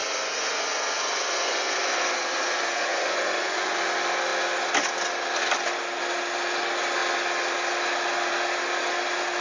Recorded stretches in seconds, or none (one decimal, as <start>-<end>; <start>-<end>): 3.8-9.4